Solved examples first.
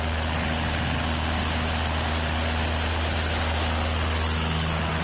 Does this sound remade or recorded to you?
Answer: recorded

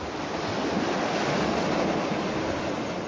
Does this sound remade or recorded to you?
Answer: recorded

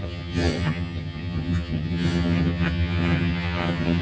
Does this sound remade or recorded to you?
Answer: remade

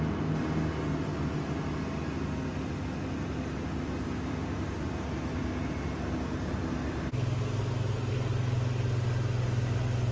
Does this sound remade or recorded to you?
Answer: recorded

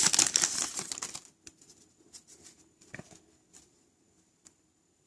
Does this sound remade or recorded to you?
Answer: recorded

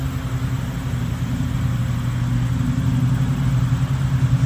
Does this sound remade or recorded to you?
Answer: recorded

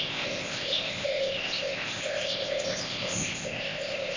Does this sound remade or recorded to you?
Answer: remade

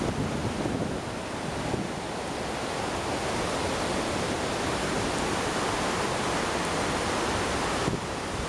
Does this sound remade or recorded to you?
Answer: recorded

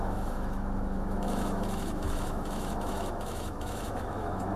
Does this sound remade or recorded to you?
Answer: remade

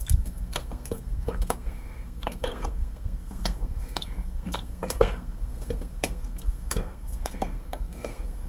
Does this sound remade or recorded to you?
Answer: remade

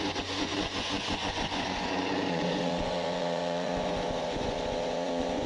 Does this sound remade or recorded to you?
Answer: remade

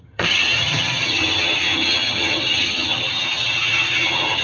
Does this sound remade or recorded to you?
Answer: remade